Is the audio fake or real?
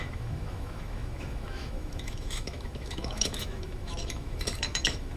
fake